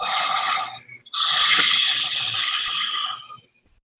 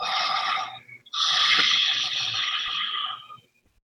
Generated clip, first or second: first